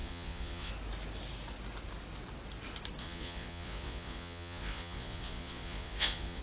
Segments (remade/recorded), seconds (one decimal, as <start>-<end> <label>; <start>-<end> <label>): 0.0-0.7 remade; 0.7-3.0 recorded; 3.0-6.4 remade